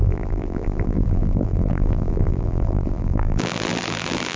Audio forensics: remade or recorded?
remade